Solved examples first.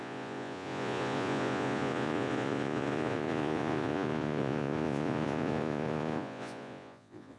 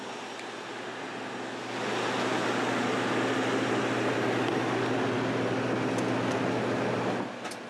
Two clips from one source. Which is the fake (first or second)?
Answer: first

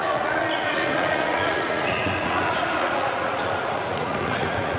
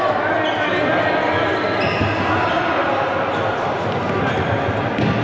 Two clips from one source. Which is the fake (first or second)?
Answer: first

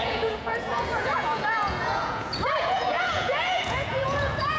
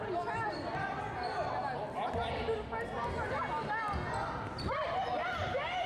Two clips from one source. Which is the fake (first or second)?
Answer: first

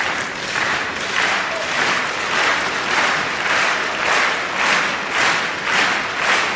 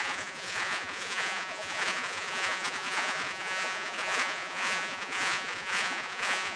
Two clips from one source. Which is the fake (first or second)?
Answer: second